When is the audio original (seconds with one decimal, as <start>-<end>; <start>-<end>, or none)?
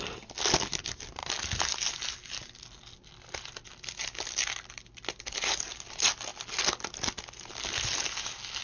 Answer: 0.0-8.6